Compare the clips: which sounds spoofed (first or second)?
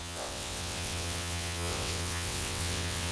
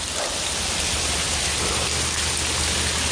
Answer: first